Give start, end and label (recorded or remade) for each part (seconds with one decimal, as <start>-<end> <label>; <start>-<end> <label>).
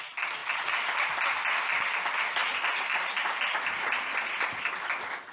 0.0-5.3 recorded